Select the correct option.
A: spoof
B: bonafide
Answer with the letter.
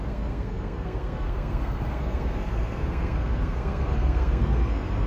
A